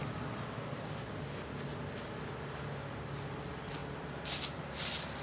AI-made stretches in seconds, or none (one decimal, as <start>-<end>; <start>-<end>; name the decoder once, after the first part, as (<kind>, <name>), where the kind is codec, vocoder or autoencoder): none